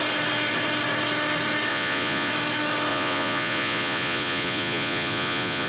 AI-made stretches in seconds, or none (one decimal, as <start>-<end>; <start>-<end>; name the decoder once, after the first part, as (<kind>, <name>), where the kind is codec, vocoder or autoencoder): 1.7-2.3 (vocoder, Vocos); 2.9-5.7